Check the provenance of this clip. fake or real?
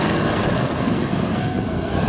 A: fake